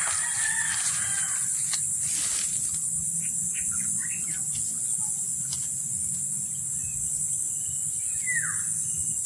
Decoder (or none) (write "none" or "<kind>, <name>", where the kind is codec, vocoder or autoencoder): none